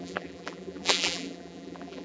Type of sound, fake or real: fake